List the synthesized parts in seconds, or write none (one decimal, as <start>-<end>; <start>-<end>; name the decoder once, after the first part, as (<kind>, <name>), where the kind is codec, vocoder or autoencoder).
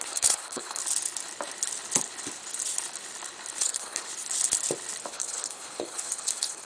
0.0-0.8 (codec, HILCodec); 3.6-4.1; 5.1-6.6